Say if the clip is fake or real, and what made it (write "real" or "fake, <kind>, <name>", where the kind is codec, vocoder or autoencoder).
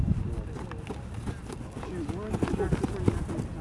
real